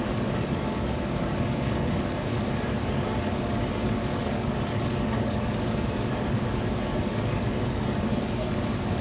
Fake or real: fake